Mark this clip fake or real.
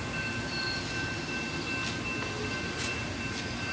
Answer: real